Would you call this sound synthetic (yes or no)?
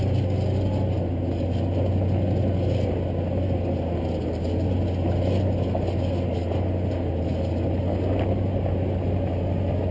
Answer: no